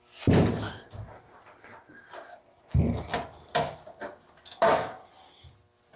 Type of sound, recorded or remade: recorded